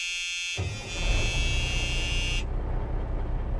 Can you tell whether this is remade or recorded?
recorded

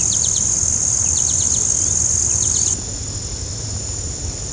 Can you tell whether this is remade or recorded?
recorded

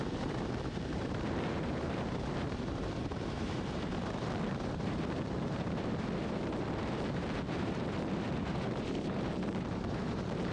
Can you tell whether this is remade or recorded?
remade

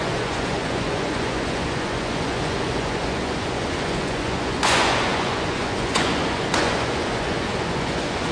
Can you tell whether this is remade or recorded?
remade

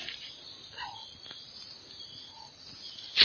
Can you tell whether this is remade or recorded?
recorded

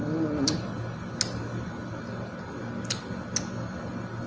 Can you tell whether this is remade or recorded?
recorded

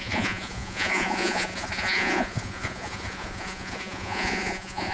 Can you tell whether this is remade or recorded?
remade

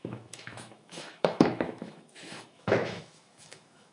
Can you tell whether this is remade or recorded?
remade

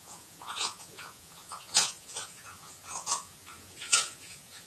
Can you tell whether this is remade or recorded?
remade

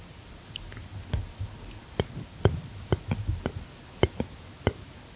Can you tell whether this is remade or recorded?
recorded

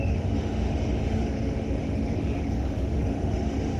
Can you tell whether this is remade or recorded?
remade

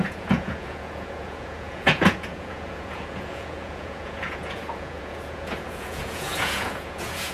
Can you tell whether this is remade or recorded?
remade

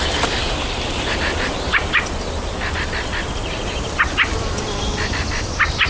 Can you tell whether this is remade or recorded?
recorded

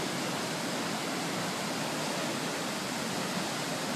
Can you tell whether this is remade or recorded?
recorded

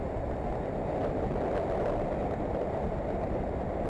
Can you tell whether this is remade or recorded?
recorded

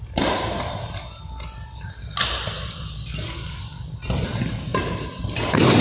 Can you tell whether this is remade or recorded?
recorded